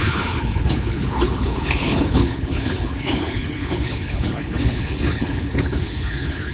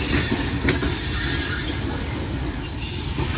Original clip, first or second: second